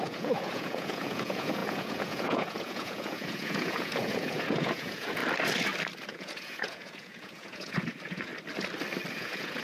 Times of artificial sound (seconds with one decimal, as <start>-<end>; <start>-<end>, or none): 0.0-5.2; 6.1-8.3; 9.1-9.6